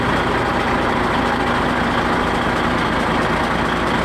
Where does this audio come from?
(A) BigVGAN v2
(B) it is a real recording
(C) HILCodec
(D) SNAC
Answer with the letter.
B